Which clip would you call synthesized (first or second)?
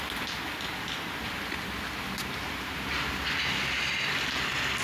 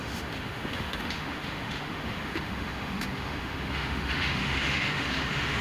second